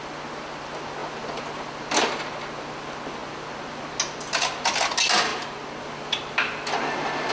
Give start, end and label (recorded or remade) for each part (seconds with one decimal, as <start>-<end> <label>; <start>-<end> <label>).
0.0-7.3 recorded